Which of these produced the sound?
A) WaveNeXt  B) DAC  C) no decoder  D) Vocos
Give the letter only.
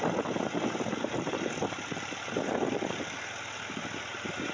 C